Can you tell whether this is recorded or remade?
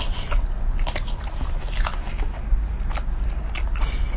recorded